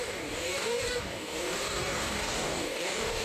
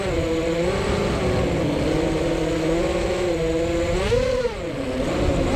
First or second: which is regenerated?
first